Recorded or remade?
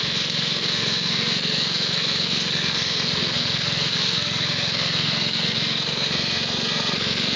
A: remade